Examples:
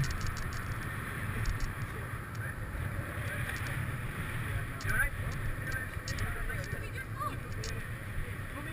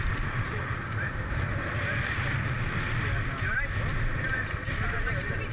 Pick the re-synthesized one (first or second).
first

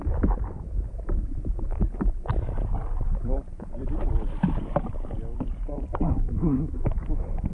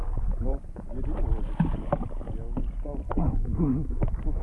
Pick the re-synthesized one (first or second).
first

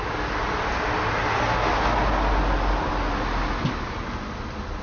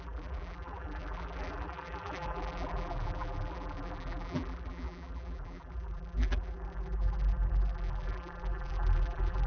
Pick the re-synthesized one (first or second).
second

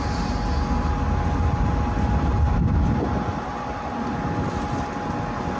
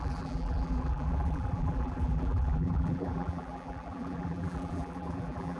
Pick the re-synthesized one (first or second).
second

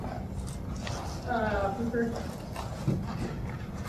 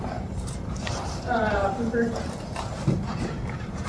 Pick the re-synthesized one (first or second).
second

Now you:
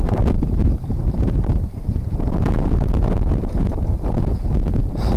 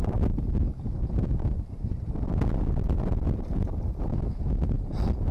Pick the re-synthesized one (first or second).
first